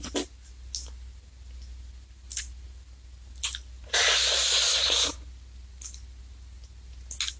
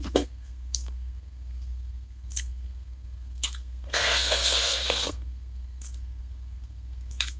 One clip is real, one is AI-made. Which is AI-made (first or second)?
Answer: second